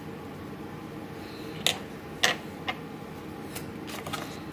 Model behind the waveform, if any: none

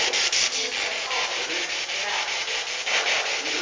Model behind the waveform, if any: none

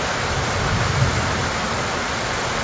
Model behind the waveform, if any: none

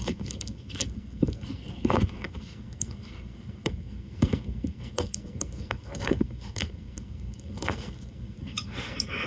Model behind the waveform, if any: codec, SNAC